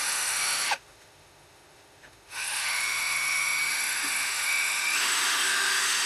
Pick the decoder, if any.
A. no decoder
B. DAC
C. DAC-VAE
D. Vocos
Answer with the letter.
C